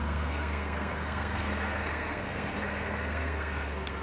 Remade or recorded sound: remade